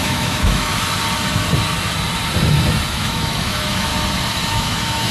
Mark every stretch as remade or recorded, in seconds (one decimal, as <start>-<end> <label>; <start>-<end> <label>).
0.0-0.7 remade; 0.7-2.9 recorded; 2.9-3.9 remade; 3.9-4.5 recorded; 4.5-5.1 remade